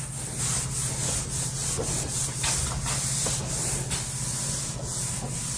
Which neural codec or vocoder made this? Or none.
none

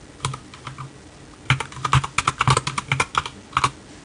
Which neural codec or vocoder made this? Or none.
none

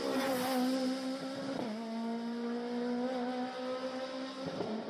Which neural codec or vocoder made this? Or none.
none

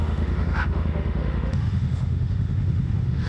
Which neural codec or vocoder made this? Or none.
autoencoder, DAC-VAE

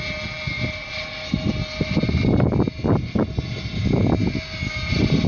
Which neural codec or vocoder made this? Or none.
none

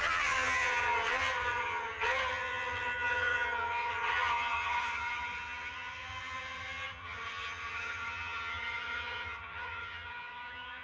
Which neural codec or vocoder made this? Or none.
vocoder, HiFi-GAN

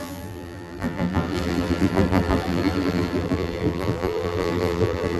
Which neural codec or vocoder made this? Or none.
vocoder, BigVGAN v2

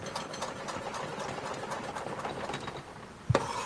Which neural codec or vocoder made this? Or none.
none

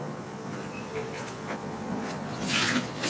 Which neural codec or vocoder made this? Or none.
vocoder, Vocos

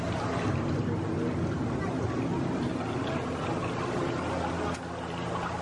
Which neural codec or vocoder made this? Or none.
none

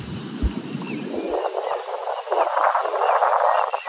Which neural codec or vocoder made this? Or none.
none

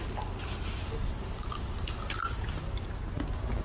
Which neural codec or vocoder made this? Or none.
none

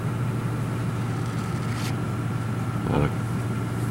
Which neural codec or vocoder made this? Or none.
none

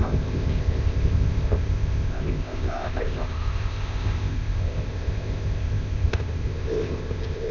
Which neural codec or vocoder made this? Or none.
codec, ZipCodec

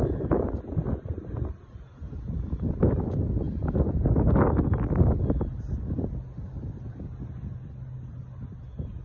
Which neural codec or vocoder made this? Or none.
none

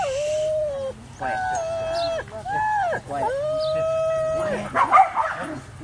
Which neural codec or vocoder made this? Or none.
none